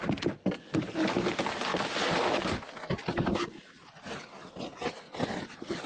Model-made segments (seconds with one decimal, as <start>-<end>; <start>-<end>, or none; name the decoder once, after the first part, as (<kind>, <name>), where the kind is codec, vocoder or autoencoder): none